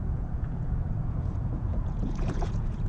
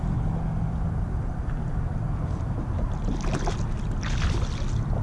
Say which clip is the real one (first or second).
second